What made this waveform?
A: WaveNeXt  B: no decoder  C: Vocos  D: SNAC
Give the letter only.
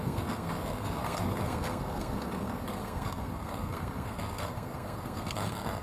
D